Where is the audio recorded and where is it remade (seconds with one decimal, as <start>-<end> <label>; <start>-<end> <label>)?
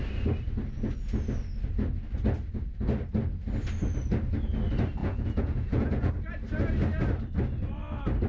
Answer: 0.0-5.0 recorded; 5.0-6.1 remade; 6.1-8.3 recorded